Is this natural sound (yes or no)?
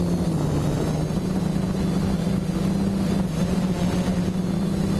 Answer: yes